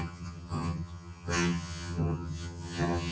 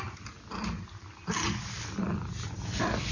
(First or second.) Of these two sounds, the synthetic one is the first